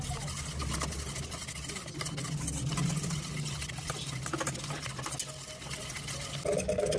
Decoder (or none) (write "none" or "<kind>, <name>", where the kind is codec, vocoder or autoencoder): none